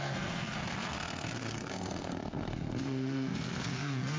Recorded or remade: remade